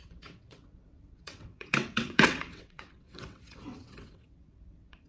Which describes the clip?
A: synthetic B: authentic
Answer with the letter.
A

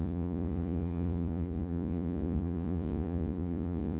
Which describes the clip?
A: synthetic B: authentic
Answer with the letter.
A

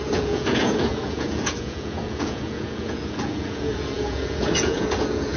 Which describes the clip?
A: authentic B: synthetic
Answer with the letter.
B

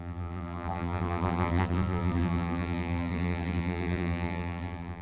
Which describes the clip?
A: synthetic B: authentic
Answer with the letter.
A